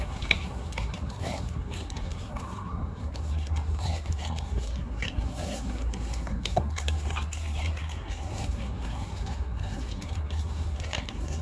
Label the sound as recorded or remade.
remade